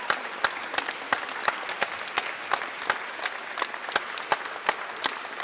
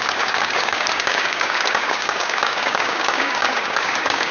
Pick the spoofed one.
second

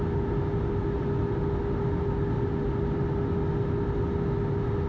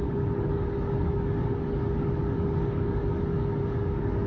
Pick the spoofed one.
second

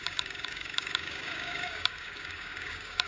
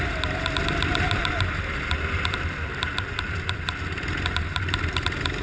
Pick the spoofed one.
first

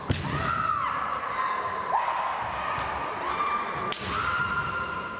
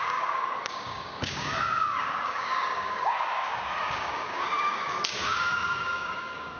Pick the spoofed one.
second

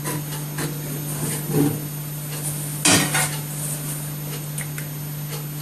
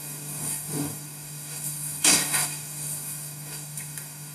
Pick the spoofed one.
second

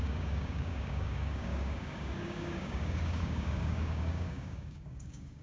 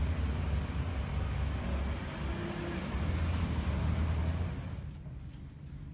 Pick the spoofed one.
first